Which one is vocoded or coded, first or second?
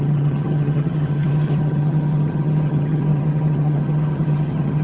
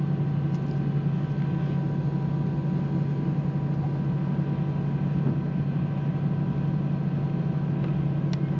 first